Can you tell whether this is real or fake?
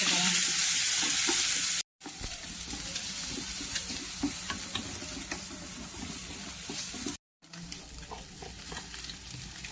real